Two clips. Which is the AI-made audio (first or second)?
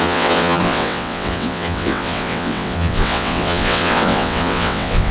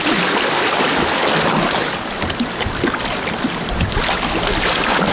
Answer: first